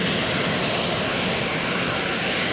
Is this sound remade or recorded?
remade